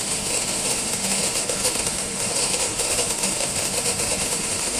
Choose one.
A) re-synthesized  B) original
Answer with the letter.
A